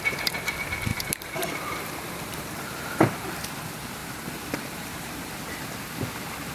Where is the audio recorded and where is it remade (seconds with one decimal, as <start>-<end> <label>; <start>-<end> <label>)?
0.0-0.9 recorded; 0.9-3.3 remade; 3.3-4.0 recorded; 4.0-5.3 remade; 5.3-6.5 recorded